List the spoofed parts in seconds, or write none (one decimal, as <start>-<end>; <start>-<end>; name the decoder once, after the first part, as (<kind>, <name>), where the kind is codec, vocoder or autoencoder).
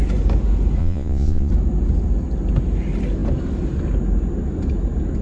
0.8-1.5 (vocoder, Vocos)